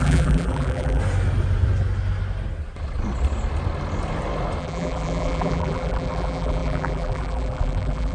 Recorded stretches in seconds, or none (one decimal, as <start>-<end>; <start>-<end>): 1.0-4.6